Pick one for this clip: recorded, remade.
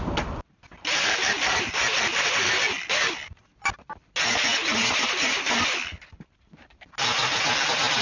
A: recorded